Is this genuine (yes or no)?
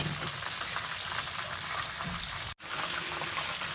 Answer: yes